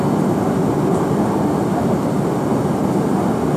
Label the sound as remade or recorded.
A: recorded